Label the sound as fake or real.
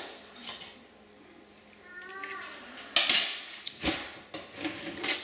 real